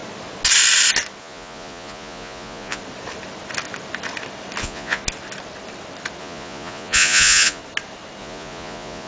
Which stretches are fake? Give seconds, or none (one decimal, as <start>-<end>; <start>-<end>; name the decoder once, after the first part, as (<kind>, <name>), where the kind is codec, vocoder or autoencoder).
1.2-2.8 (vocoder, Vocos); 4.6-5.0; 6.2-7.6; 8.2-9.1